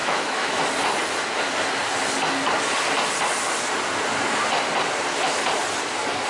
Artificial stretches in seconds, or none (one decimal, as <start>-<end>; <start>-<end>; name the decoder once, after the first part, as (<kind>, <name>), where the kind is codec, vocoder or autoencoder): 0.0-0.6 (autoencoder, DAC-VAE)